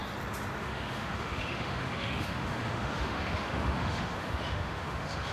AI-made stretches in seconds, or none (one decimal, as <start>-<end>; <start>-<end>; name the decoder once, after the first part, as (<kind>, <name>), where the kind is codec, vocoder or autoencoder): 0.6-5.3 (autoencoder, DAC-VAE)

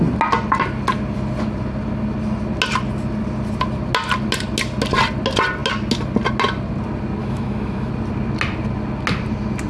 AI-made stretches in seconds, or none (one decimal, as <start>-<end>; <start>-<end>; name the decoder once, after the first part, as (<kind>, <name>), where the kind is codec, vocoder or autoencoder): 7.2-7.9 (autoencoder, DAC-VAE)

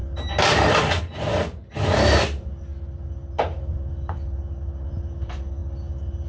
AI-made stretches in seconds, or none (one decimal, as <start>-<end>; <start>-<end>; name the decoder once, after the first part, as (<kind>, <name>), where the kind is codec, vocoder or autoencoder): none

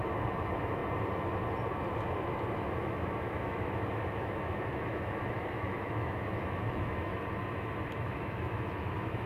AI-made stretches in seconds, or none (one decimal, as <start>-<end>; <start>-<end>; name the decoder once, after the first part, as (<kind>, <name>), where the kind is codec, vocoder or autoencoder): 0.0-0.8 (autoencoder, DAC-VAE); 2.8-7.1; 7.9-9.3

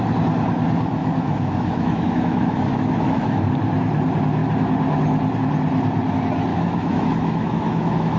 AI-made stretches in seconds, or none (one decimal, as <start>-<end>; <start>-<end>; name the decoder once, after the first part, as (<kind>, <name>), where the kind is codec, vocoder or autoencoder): 1.0-3.5 (autoencoder, DAC-VAE); 6.5-8.2